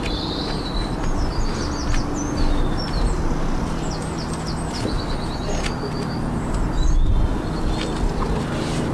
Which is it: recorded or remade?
recorded